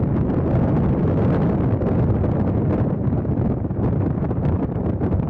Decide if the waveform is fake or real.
real